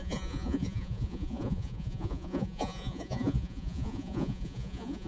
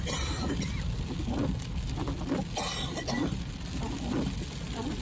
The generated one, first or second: first